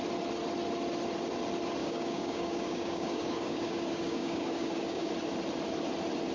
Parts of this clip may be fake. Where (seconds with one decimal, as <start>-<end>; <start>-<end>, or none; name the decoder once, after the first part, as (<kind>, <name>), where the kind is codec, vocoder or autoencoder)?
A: 1.8-5.1 (codec, DAC)